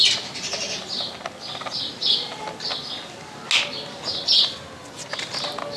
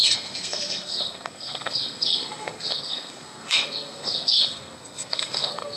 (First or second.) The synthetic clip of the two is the second